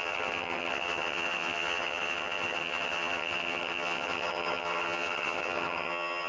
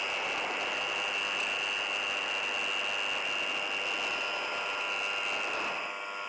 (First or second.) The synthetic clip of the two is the first